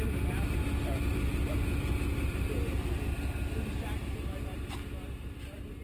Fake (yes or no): no